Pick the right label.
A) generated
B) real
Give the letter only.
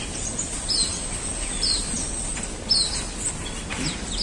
B